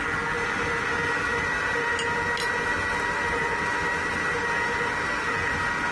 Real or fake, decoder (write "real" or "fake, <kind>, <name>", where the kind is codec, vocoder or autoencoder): real